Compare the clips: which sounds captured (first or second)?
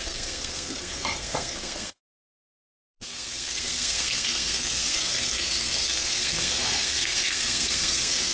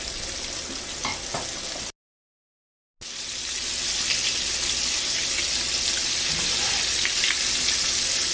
second